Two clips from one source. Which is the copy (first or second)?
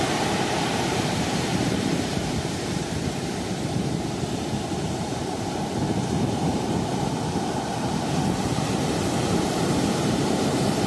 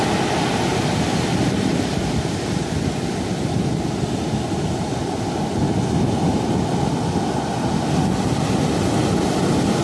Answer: first